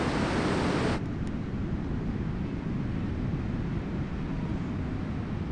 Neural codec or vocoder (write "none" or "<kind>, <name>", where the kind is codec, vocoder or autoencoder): none